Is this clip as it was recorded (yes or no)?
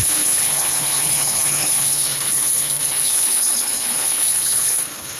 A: no